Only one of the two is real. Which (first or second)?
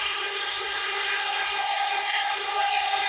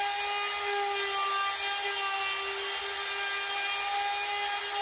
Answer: second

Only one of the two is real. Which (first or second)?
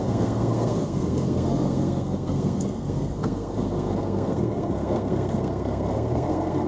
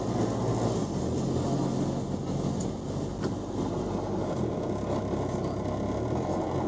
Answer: second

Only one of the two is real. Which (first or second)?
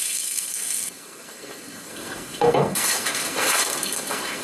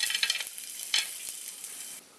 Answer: second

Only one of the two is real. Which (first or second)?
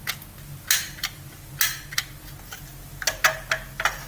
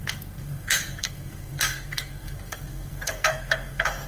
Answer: first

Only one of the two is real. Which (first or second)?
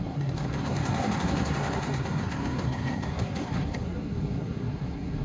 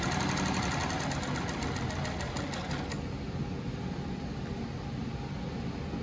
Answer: second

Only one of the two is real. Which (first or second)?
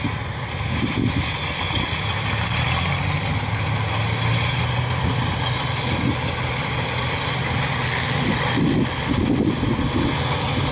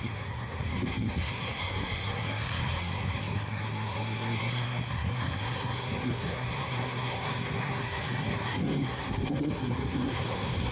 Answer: first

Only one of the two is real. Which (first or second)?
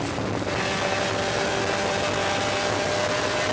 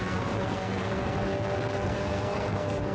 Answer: first